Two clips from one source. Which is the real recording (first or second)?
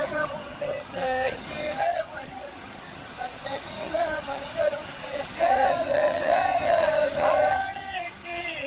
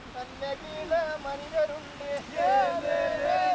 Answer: second